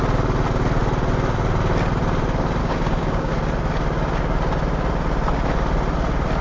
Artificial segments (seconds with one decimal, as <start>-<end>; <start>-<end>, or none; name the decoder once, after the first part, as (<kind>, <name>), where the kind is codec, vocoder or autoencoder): 2.6-3.3 (codec, DAC)